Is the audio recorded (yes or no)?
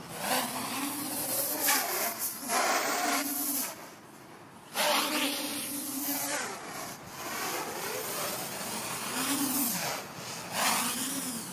yes